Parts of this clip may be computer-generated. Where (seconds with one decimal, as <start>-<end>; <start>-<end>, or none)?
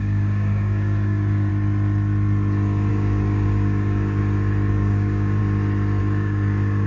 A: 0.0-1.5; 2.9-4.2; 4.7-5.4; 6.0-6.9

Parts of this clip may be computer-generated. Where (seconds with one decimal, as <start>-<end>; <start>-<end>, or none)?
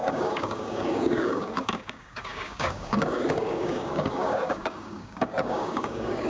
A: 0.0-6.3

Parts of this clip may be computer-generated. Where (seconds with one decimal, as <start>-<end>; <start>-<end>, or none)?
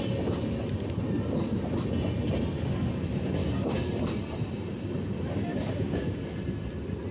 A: 3.4-3.9; 5.5-6.2